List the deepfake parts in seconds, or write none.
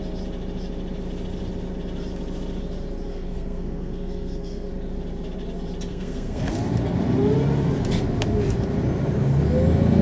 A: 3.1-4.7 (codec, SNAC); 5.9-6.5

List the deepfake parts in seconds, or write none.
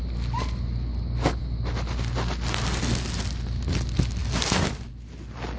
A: none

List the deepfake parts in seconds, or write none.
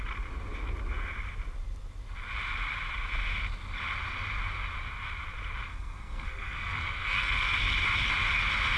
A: 5.7-7.5 (codec, SNAC)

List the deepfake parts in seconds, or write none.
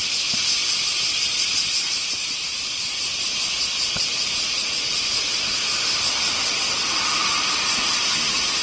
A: none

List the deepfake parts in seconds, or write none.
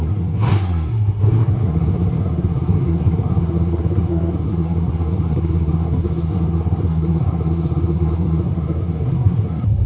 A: 0.0-9.9 (codec, SNAC)